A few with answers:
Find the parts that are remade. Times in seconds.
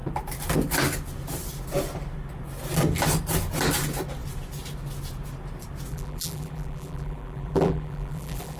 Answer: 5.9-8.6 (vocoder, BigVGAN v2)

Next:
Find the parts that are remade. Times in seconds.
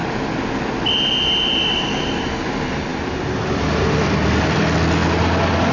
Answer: none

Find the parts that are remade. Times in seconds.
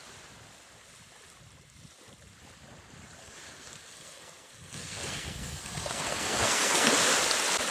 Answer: 3.2-6.9 (codec, SNAC)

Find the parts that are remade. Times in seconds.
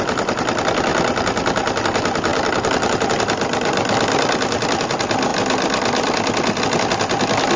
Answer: 0.0-0.9 (vocoder, BigVGAN v2); 1.8-7.6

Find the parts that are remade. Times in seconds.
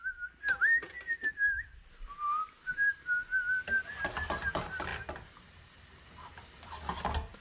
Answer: none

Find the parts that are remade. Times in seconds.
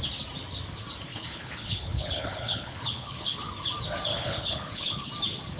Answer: 1.1-3.5 (codec, HILCodec); 4.1-5.1